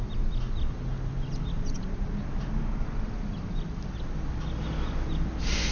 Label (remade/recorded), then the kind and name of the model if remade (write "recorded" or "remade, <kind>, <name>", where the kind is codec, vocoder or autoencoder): recorded